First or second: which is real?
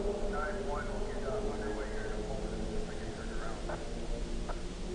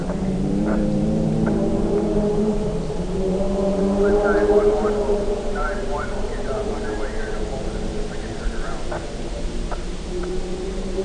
first